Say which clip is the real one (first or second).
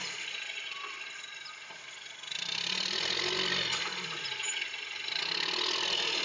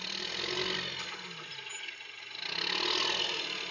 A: second